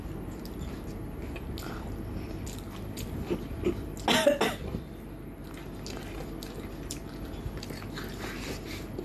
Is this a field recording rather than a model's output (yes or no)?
yes